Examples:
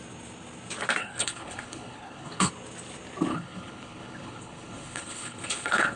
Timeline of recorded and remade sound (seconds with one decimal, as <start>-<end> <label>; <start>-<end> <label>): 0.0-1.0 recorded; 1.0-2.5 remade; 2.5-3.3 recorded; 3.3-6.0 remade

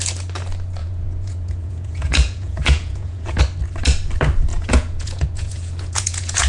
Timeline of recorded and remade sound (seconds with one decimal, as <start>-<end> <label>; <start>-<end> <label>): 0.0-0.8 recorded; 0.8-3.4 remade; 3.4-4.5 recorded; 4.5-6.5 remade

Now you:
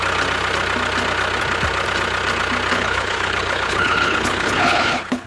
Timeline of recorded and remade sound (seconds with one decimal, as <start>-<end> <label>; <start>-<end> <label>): 0.0-2.7 recorded; 2.7-5.3 remade